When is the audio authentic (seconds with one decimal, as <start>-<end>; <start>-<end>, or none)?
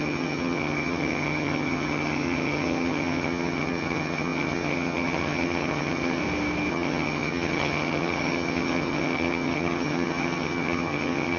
6.2-6.7